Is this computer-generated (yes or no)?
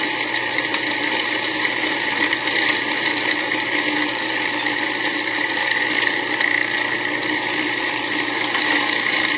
no